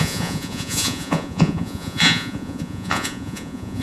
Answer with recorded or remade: remade